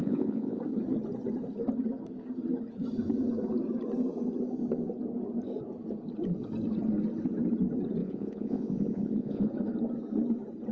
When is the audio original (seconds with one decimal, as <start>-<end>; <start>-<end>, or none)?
0.6-8.0; 9.5-10.7